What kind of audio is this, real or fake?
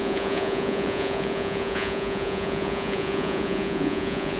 fake